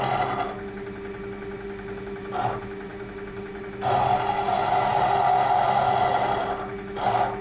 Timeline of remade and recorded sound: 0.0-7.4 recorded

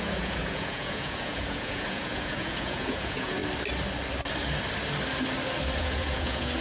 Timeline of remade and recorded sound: 0.0-3.4 remade; 3.4-5.8 recorded; 5.8-6.6 remade

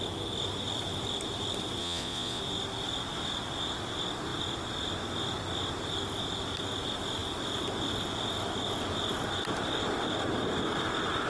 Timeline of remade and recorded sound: 0.0-1.8 recorded; 1.8-2.4 remade; 2.4-11.3 recorded